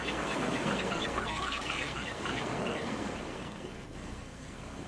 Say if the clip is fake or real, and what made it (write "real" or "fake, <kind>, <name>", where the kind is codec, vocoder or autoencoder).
fake, codec, SNAC